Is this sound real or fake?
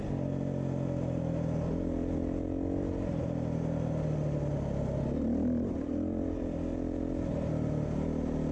real